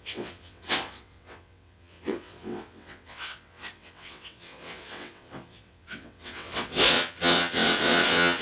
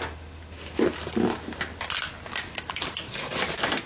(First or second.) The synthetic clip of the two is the first